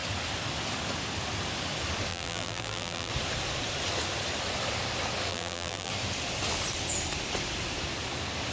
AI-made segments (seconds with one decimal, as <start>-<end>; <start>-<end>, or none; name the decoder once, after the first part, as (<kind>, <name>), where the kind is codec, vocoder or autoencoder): 2.1-3.1 (vocoder, BigVGAN v2); 5.3-5.9